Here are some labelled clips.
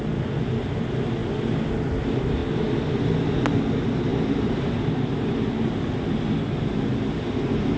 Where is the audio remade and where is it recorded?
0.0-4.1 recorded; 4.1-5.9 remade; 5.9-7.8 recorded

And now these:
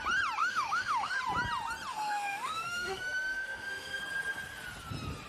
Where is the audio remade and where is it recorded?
0.0-0.4 recorded; 0.4-1.2 remade; 1.2-1.9 recorded; 1.9-4.0 remade; 4.0-5.3 recorded

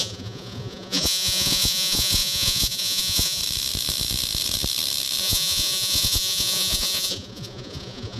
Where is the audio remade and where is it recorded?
0.0-3.4 remade; 3.4-5.2 recorded; 5.2-8.2 remade

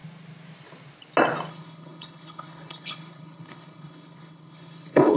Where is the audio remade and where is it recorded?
0.0-1.5 recorded; 1.5-5.2 remade